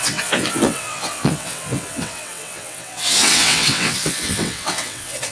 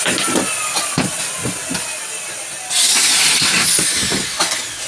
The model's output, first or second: first